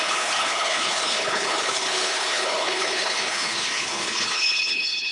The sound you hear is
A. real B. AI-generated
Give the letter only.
B